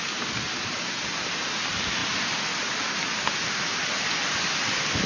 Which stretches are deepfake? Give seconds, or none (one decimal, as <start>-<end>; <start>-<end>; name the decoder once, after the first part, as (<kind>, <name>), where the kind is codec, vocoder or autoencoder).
none